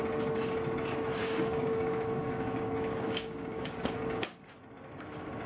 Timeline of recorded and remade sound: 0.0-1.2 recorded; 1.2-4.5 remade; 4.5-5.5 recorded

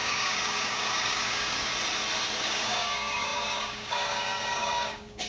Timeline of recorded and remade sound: 0.0-1.7 remade; 1.7-2.3 recorded; 2.3-5.3 remade

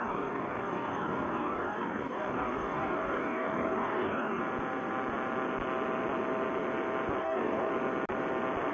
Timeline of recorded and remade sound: 0.0-4.4 remade; 4.4-7.2 recorded; 7.2-7.7 remade; 7.7-8.7 recorded

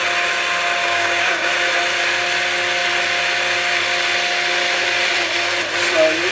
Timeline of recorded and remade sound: 0.0-0.8 recorded; 0.8-1.5 remade; 1.5-6.3 recorded

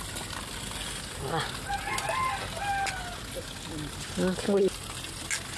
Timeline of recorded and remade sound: 0.0-5.6 recorded